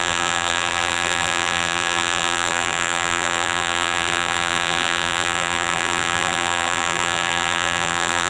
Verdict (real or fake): fake